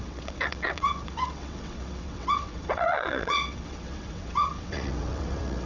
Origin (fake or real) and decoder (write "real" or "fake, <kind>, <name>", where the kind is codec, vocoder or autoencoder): fake, vocoder, WaveNeXt